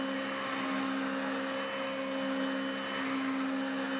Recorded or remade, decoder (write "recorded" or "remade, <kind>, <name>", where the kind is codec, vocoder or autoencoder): recorded